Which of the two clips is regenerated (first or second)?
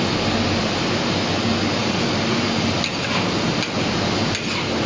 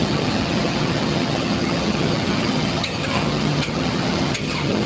second